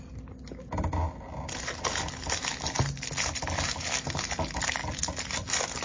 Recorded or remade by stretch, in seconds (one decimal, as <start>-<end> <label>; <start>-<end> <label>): 0.0-5.8 recorded